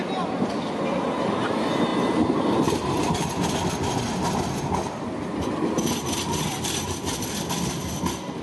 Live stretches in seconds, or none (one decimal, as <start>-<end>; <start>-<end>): 0.0-8.4